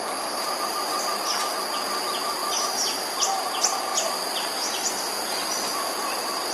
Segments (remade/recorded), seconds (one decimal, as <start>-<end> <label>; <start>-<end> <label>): 0.0-2.4 recorded; 2.4-3.2 remade; 3.2-6.5 recorded